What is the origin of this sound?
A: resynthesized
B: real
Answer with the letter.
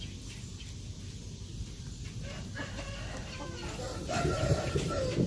B